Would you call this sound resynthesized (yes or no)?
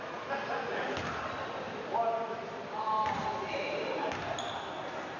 no